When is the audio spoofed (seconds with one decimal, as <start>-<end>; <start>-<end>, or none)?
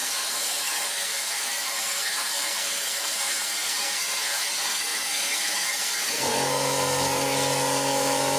0.0-8.4